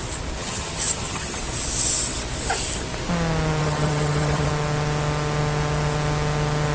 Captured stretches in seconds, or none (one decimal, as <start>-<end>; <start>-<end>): 0.0-0.4; 1.4-3.6; 4.5-6.7